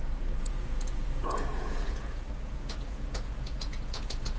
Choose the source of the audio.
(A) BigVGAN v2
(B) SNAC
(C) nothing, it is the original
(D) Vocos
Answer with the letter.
D